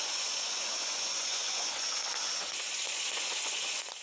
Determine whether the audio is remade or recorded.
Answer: remade